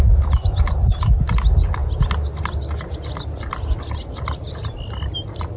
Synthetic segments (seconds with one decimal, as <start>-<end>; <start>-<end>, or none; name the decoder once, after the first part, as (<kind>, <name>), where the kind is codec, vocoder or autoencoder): none

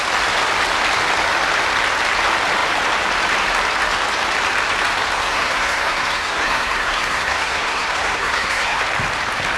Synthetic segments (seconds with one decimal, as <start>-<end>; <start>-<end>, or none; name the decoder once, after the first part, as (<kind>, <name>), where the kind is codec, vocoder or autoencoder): 5.2-8.8 (codec, SNAC)

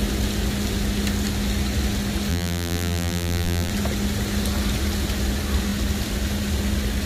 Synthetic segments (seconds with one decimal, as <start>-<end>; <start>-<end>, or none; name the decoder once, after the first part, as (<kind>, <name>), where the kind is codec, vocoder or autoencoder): 2.3-3.7 (vocoder, BigVGAN v2)

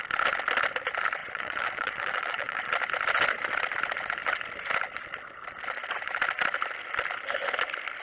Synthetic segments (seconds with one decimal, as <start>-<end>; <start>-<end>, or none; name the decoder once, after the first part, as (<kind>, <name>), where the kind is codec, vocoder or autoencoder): 1.2-2.7 (vocoder, Vocos)

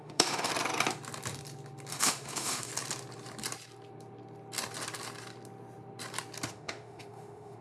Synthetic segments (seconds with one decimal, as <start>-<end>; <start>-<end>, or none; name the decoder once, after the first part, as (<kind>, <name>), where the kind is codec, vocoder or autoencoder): 0.0-0.5 (autoencoder, DAC-VAE); 1.9-2.7; 6.5-7.6

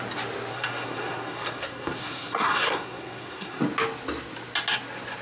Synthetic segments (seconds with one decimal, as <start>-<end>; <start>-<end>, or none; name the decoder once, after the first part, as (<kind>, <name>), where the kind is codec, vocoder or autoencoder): 0.5-3.6 (codec, SNAC)